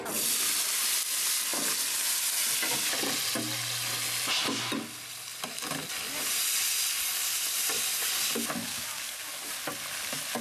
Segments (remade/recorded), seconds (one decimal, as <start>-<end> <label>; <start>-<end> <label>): 0.0-8.6 recorded; 8.6-9.5 remade; 9.5-10.4 recorded